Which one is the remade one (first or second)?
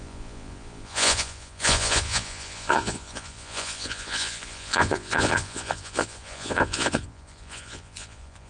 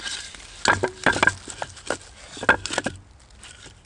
first